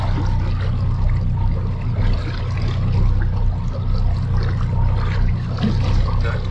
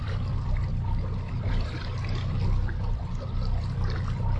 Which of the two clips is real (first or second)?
first